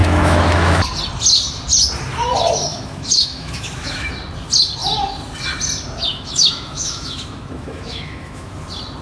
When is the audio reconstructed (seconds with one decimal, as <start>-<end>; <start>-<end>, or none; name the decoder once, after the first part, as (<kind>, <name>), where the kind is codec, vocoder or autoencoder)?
0.0-0.8 (autoencoder, DAC-VAE); 2.7-4.1; 6.1-8.5